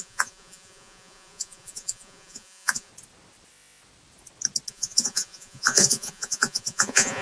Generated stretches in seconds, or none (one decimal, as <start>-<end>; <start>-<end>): 0.0-2.9; 4.7-7.2